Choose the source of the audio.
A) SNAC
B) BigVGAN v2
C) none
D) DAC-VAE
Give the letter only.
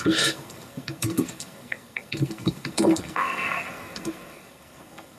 A